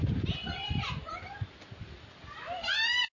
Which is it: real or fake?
real